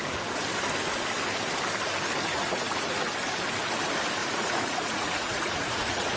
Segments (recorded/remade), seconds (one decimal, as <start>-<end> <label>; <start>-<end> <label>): 0.0-2.3 recorded; 2.3-3.1 remade; 3.1-4.2 recorded; 4.2-6.2 remade